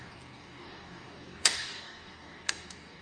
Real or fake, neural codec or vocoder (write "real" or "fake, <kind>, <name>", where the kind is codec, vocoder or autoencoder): fake, codec, DAC